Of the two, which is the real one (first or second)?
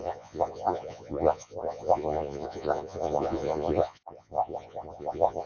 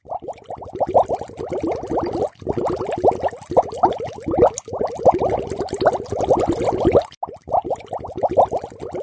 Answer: second